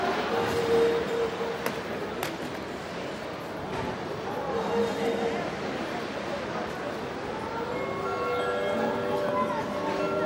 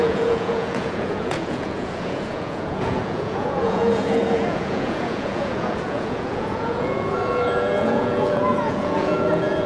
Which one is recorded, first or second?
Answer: first